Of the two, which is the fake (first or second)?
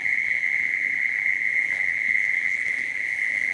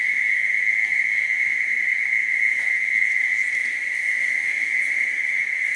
first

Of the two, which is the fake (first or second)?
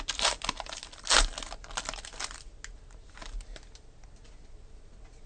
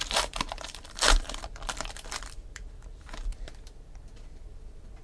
second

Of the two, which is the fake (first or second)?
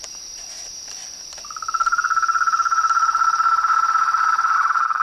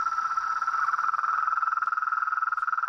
first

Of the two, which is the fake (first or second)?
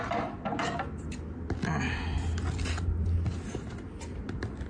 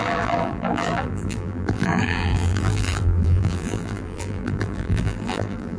second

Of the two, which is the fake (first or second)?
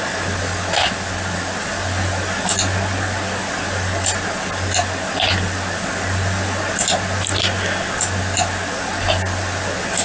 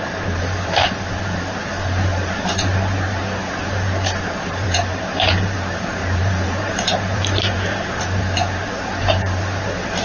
second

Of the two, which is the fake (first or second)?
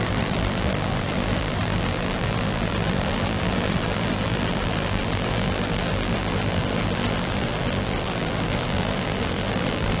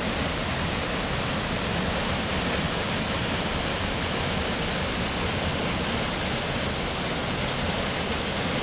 first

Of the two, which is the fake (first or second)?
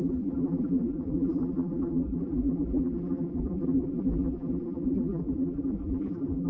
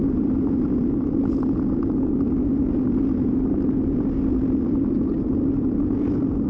first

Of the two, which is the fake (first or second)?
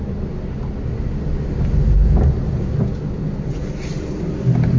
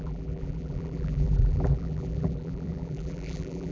second